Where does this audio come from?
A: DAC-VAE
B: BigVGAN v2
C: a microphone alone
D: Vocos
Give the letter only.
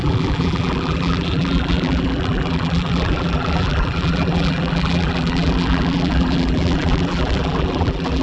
B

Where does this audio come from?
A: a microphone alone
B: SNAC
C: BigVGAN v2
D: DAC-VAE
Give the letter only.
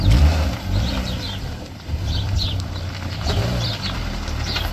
C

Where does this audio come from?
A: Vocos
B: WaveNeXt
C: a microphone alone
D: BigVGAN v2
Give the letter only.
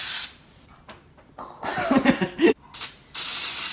D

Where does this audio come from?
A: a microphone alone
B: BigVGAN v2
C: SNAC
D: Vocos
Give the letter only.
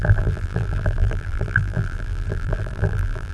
B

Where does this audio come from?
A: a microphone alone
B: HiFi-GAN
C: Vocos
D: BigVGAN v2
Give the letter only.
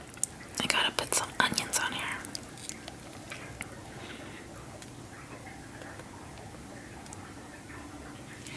A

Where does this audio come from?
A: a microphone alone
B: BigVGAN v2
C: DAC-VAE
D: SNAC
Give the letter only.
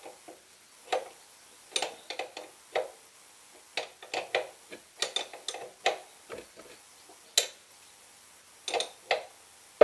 A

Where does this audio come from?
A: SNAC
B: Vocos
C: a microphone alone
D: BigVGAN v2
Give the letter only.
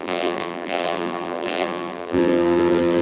D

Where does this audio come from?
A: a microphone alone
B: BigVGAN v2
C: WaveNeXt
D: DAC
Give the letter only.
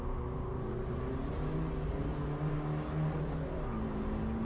A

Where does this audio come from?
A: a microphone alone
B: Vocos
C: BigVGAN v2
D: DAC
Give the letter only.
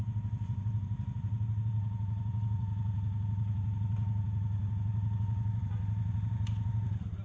C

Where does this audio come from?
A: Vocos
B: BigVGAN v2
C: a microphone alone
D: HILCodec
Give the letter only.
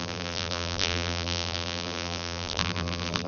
B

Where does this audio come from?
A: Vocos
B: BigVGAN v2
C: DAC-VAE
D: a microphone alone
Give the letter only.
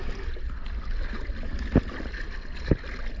D